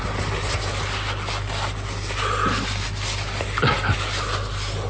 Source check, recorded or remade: recorded